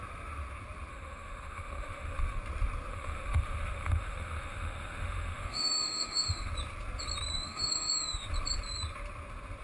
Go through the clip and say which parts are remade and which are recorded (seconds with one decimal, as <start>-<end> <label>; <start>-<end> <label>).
0.0-0.9 recorded; 0.9-2.4 remade; 2.4-2.9 recorded; 2.9-6.5 remade; 6.5-7.3 recorded; 7.3-8.3 remade; 8.3-9.6 recorded